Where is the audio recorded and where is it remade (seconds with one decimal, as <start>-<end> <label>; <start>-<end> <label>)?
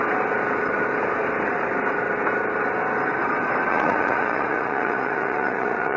0.0-3.7 recorded; 3.7-6.0 remade